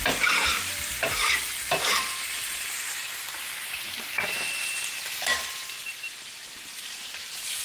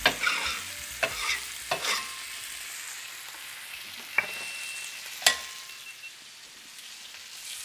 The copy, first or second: first